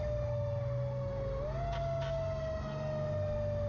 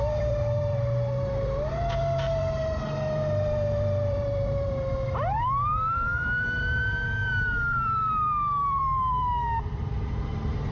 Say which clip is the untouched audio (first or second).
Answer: first